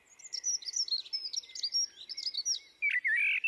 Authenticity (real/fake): real